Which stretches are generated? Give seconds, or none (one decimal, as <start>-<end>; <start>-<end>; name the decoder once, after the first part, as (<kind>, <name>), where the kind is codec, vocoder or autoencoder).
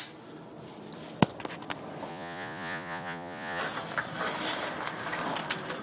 2.1-3.6 (vocoder, Vocos)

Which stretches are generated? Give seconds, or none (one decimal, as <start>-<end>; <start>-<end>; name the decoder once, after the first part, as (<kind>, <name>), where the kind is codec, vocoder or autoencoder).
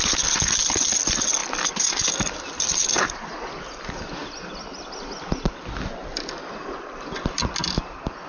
1.4-3.2 (vocoder, BigVGAN v2)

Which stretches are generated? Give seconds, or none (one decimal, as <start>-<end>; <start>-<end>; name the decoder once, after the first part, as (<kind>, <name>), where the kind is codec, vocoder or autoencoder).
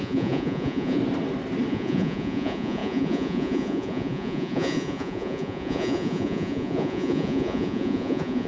0.0-1.0 (vocoder, Vocos); 1.7-8.5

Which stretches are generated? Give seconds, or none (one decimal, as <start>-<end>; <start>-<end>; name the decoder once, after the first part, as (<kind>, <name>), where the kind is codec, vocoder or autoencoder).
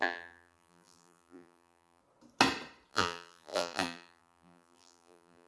0.0-2.0 (vocoder, BigVGAN v2); 2.9-5.5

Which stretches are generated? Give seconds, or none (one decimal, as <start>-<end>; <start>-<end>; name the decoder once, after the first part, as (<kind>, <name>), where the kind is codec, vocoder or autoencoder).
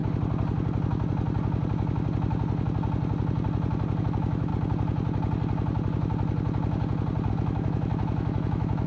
4.0-4.5 (autoencoder, DAC-VAE); 7.3-8.9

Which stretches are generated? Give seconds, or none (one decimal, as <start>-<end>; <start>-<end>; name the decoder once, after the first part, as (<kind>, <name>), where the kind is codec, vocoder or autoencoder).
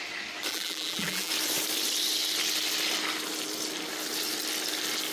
0.5-1.3 (vocoder, BigVGAN v2)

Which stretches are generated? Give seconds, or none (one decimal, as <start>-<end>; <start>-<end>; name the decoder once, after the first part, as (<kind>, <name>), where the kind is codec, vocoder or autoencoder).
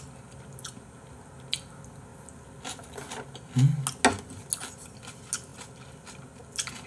none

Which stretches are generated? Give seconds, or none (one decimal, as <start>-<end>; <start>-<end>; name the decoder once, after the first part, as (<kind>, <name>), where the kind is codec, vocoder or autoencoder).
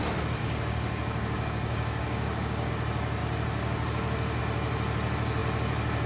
0.4-2.7 (codec, DAC)